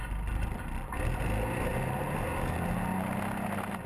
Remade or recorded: recorded